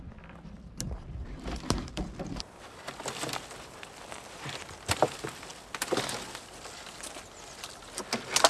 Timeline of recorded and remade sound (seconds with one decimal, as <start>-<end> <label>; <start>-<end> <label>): 0.0-8.5 recorded